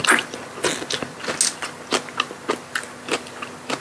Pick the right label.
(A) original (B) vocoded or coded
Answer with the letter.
A